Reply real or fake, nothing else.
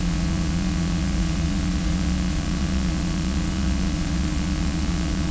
fake